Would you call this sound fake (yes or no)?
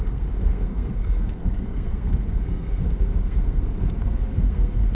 yes